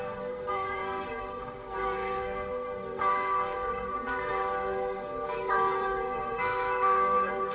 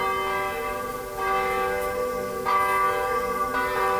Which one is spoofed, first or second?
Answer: first